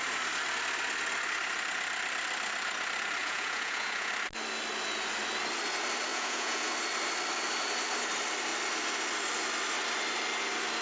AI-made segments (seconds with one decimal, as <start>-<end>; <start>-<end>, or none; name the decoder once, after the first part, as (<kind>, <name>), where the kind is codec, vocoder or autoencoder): 3.2-4.1 (vocoder, Vocos); 6.1-6.7